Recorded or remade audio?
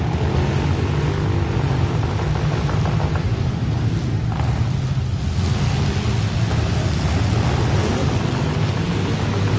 recorded